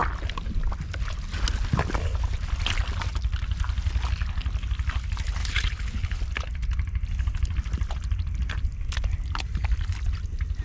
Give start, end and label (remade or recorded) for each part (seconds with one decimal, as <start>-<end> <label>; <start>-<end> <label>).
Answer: 0.0-5.4 recorded; 5.4-6.2 remade; 6.2-10.6 recorded